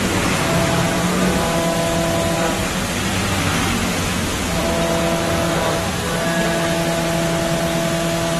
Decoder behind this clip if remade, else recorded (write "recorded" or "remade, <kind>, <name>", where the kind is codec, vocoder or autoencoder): recorded